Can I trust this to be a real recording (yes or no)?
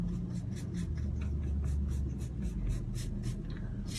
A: yes